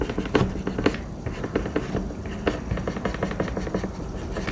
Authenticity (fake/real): real